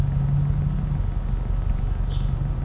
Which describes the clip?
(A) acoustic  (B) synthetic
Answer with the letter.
A